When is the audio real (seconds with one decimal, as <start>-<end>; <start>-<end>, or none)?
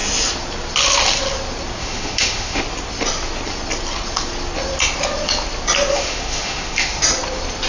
0.0-1.8; 2.6-5.9; 7.0-7.7